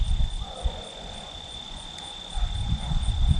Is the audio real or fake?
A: fake